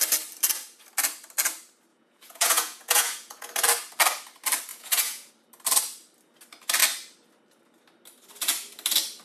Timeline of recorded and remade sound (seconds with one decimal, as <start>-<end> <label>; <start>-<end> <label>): 0.0-1.9 recorded; 1.9-3.5 remade; 3.5-4.7 recorded; 4.7-5.3 remade; 5.3-9.2 recorded